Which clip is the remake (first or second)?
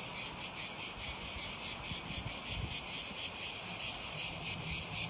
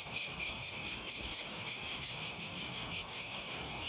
second